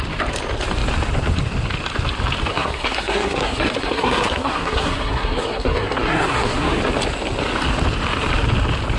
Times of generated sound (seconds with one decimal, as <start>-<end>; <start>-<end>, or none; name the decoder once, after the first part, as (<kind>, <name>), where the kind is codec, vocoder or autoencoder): 2.5-6.8 (codec, SNAC)